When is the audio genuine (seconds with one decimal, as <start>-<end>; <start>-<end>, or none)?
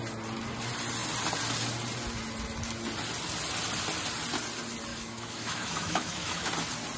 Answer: 0.0-4.9; 6.5-7.0